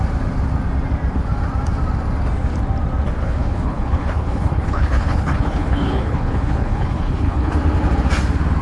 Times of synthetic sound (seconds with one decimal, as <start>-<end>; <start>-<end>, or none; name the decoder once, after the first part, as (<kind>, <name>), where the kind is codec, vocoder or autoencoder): 3.2-7.5 (codec, HILCodec)